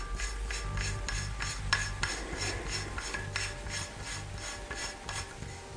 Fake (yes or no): no